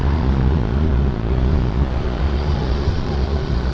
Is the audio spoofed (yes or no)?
yes